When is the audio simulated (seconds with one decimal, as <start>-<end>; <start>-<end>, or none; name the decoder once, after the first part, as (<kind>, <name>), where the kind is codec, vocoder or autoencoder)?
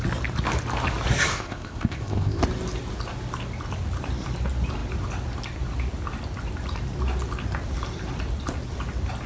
1.3-2.4 (codec, ZipCodec)